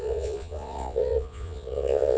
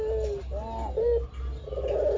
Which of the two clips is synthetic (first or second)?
first